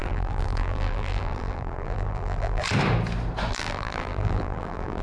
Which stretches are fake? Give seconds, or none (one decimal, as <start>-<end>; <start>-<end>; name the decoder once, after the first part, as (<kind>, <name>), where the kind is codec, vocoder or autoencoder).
0.0-2.6 (vocoder, BigVGAN v2); 3.5-5.0